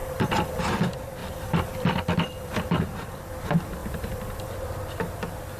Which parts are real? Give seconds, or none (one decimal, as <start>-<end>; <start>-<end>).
0.6-1.2; 2.6-3.8; 4.5-5.6